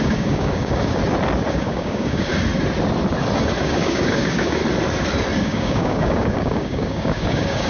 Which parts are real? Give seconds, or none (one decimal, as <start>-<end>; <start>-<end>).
1.0-1.5; 2.3-3.6; 4.6-5.4